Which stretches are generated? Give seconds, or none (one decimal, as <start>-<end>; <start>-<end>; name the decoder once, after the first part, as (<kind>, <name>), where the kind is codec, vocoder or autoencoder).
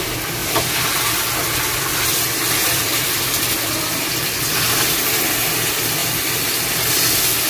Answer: 0.4-4.4 (vocoder, BigVGAN v2); 6.0-6.5